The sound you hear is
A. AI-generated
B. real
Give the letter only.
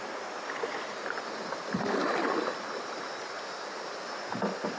B